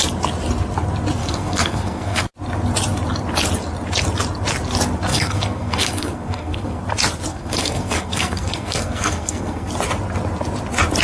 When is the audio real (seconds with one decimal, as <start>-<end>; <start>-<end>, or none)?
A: 0.0-1.2; 2.2-5.1; 6.8-7.3; 9.7-11.0